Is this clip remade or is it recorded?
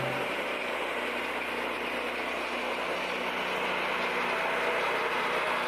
recorded